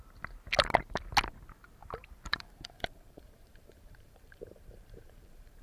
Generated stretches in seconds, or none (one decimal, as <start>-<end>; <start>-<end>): 1.8-5.6